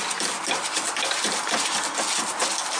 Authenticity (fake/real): real